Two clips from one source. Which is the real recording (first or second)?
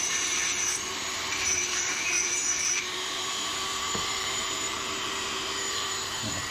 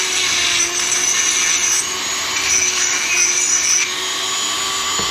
second